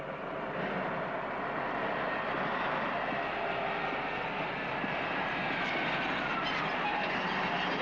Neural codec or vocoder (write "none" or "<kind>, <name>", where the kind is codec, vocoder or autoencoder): none